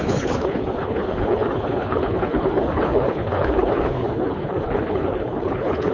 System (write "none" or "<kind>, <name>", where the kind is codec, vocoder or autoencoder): codec, HILCodec